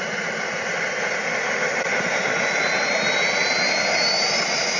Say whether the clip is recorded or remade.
recorded